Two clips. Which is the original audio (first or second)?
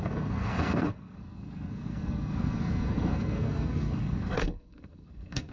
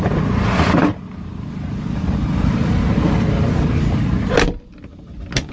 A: second